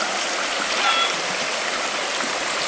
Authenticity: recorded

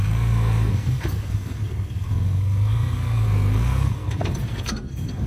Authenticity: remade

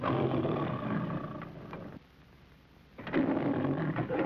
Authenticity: recorded